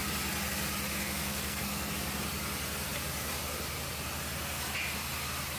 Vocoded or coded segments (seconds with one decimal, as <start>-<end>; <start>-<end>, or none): 1.0-1.9